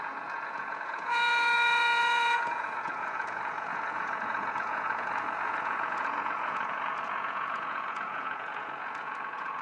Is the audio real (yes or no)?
no